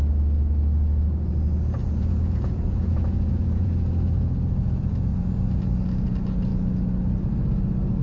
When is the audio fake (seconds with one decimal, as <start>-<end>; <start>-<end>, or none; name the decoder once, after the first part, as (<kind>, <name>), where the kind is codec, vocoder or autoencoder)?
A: 1.8-5.7 (vocoder, Vocos)